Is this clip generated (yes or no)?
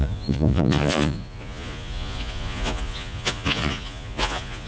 yes